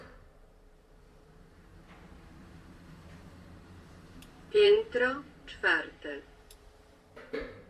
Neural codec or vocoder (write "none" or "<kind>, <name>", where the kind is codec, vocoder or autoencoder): vocoder, BigVGAN v2